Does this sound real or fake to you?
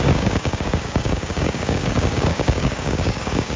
fake